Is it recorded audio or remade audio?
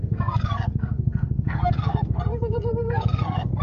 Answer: remade